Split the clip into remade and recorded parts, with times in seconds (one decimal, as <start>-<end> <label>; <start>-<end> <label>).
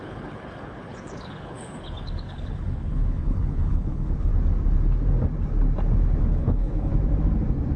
0.0-4.3 remade; 4.3-6.2 recorded; 6.2-6.9 remade; 6.9-7.8 recorded